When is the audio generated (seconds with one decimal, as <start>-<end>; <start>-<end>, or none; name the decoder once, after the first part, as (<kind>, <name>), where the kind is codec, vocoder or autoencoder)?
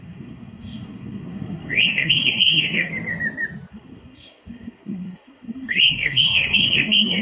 0.0-2.9 (codec, SNAC); 3.7-7.2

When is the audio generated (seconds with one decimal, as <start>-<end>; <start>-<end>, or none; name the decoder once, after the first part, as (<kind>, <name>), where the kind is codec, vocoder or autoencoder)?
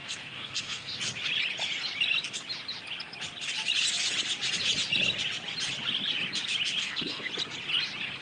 0.0-1.0 (codec, SNAC); 6.8-7.3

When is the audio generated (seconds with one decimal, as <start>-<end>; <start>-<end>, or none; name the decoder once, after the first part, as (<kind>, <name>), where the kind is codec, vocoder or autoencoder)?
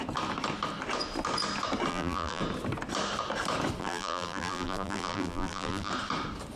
1.9-2.4 (vocoder, BigVGAN v2); 3.8-5.9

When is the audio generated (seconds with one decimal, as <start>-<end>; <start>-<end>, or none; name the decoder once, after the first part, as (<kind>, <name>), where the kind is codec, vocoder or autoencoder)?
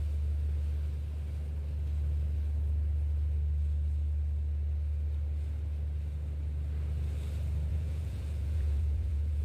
7.7-9.4 (vocoder, Vocos)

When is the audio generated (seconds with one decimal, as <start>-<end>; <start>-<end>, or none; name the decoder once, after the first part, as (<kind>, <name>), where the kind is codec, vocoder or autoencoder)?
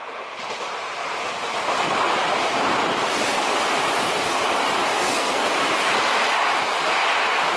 4.9-5.5 (codec, SNAC)